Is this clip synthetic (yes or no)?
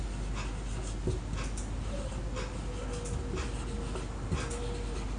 no